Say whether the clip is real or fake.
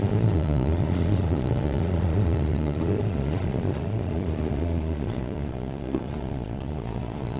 fake